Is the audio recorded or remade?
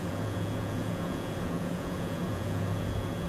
remade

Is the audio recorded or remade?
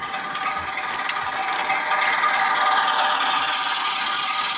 recorded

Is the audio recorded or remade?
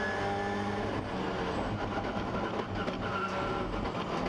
recorded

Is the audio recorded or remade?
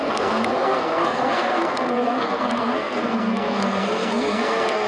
remade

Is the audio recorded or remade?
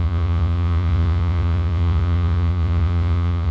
remade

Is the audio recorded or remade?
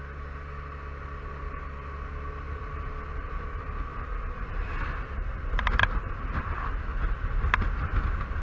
recorded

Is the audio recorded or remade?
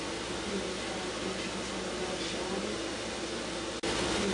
recorded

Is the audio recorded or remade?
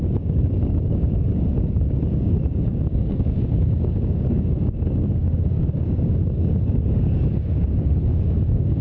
remade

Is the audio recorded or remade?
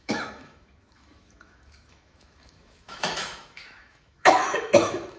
remade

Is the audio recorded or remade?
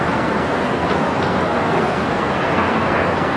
remade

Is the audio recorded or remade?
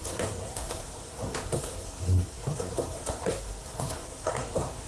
remade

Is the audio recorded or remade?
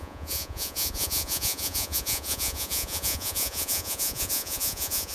remade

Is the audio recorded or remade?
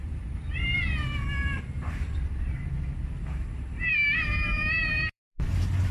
remade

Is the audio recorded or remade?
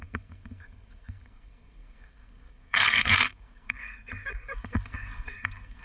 remade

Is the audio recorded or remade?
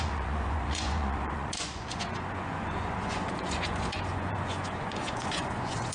remade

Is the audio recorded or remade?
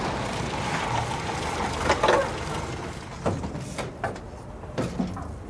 recorded